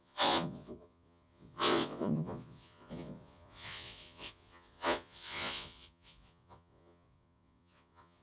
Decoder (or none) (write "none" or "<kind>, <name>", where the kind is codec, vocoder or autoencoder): vocoder, Vocos